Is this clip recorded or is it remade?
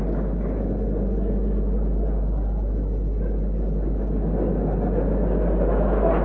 recorded